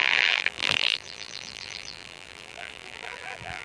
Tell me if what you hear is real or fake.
fake